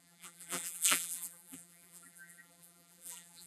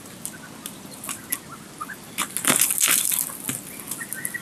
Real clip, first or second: second